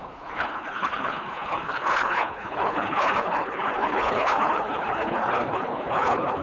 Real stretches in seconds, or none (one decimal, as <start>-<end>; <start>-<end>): none